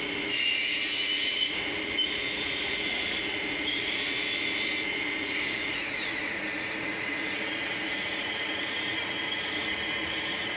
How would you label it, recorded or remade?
remade